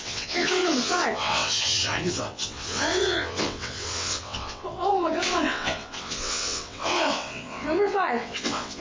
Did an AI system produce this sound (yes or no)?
yes